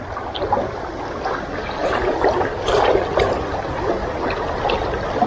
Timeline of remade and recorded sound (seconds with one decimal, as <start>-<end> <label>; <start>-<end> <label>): 0.0-5.3 recorded